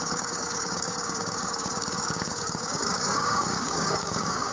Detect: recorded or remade remade